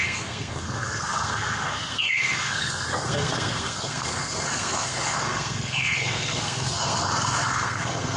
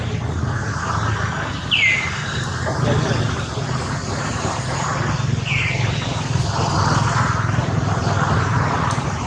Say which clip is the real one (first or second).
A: second